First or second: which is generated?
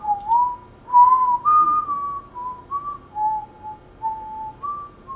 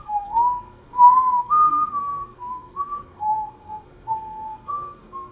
second